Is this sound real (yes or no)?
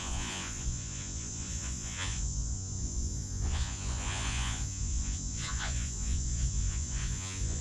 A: no